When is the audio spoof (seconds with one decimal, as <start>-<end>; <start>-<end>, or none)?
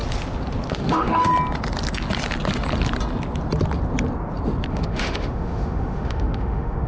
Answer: 0.7-1.3; 4.7-6.9